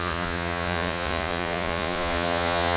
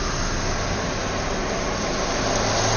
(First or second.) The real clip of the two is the second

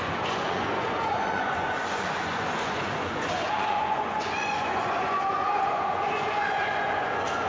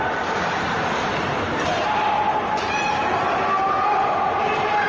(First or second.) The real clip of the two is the second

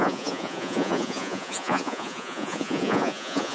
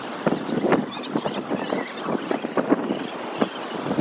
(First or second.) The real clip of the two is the second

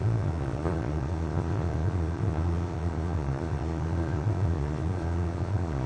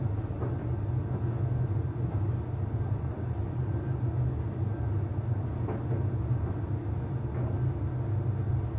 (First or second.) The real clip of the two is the second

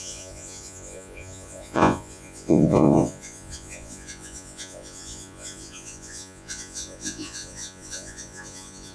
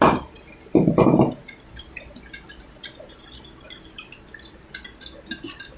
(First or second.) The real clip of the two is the second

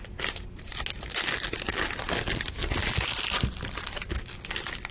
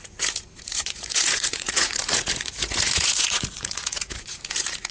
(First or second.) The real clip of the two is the first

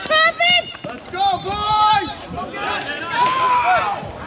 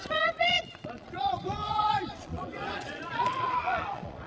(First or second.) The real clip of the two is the first